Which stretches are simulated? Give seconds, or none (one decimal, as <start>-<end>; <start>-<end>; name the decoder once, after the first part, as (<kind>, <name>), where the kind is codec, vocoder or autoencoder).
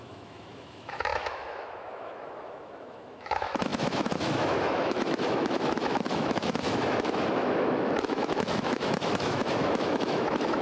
0.0-10.6 (autoencoder, DAC-VAE)